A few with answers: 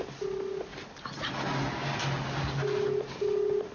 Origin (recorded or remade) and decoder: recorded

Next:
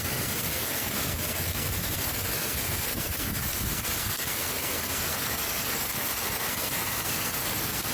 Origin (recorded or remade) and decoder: remade, codec, SNAC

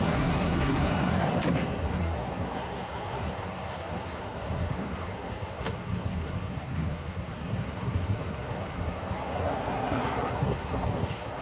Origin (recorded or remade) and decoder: remade, codec, SNAC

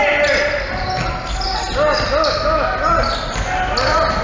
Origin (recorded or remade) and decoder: recorded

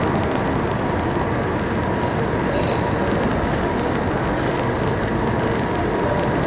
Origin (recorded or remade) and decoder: recorded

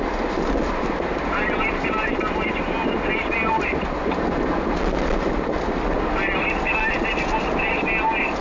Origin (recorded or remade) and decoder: recorded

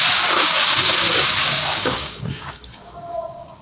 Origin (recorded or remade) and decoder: remade, codec, DAC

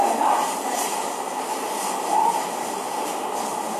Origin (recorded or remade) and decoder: recorded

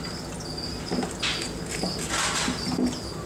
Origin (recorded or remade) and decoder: recorded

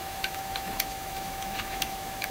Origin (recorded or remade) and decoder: remade, autoencoder, DAC-VAE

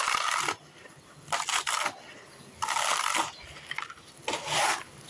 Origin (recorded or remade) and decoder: recorded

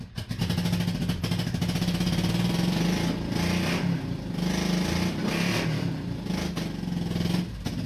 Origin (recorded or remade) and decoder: recorded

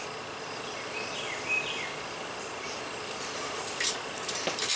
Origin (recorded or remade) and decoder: remade, vocoder, BigVGAN v2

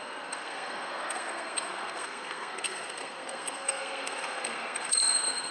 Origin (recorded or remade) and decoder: remade, codec, SNAC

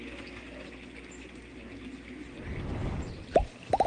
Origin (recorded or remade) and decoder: recorded